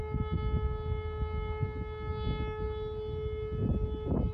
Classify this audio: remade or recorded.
recorded